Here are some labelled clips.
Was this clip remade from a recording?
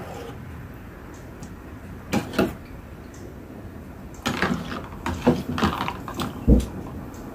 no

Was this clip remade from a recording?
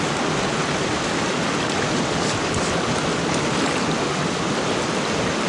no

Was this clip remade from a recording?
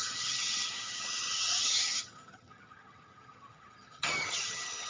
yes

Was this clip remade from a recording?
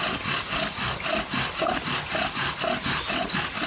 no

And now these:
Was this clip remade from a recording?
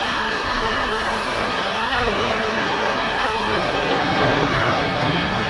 yes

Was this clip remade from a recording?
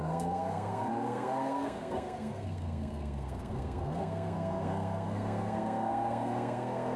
yes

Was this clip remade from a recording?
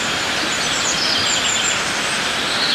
no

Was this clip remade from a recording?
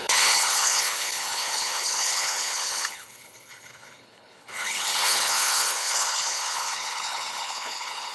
yes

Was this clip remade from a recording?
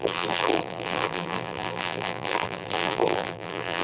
yes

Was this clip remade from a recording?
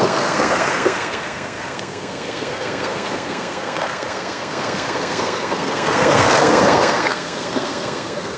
yes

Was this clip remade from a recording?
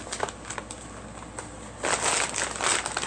no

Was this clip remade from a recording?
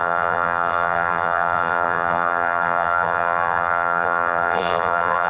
yes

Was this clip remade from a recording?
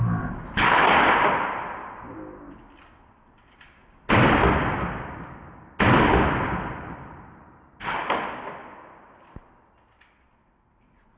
no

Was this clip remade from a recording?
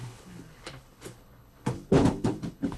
yes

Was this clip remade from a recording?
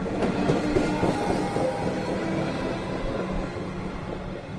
no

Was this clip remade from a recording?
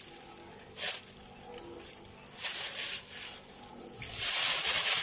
no